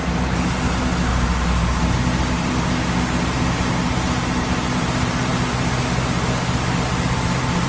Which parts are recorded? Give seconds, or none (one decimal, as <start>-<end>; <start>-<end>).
0.7-1.1; 4.5-7.7